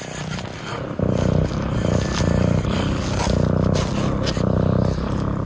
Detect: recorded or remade recorded